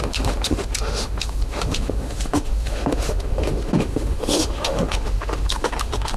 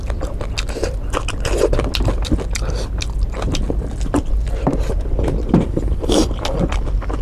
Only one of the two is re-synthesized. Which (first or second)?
first